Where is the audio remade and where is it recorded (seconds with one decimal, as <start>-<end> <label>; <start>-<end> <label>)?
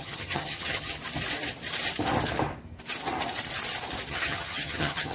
0.0-1.0 remade; 1.0-4.1 recorded; 4.1-5.1 remade